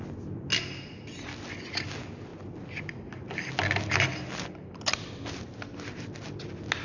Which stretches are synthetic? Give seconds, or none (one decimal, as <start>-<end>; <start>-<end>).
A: none